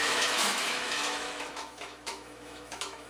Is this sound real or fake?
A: fake